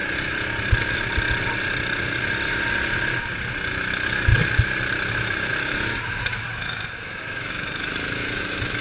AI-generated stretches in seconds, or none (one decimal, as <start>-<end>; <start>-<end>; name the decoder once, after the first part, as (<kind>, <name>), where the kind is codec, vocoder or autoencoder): 3.7-4.3 (autoencoder, DAC-VAE); 5.1-8.8